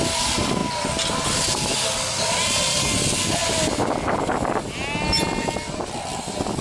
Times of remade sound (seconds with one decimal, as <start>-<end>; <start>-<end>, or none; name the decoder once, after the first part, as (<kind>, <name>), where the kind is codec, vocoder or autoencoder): none

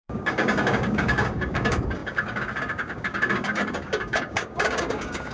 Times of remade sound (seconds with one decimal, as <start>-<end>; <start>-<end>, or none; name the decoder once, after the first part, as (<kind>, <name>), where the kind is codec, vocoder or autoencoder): 0.0-5.3 (codec, DAC)

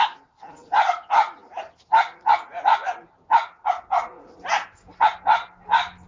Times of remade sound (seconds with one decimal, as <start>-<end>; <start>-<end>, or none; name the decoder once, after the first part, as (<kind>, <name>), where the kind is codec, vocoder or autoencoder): none

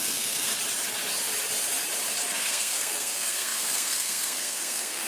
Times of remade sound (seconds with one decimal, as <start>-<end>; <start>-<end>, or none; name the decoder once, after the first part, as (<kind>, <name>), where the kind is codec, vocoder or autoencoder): 0.0-0.5 (codec, SNAC); 2.4-5.1